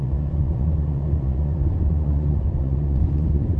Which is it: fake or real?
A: fake